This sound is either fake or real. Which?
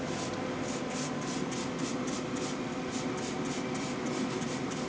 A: real